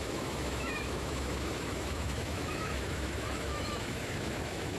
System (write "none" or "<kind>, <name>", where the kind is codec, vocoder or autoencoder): autoencoder, DAC-VAE